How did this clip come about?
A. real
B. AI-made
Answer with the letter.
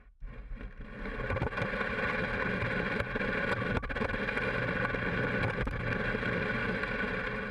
A